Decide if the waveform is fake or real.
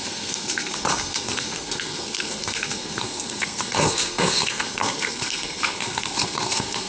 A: fake